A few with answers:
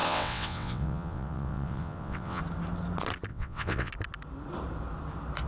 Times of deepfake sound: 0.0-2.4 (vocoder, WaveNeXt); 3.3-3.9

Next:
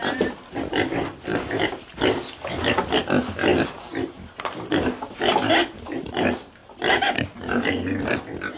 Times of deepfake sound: none

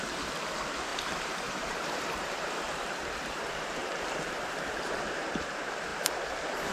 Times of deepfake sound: 0.9-4.9 (vocoder, BigVGAN v2)

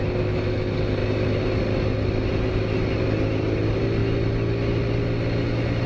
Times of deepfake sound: none

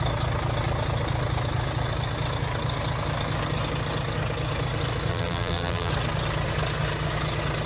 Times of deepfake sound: 5.1-5.9 (vocoder, BigVGAN v2)